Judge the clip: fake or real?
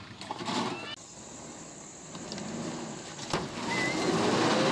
real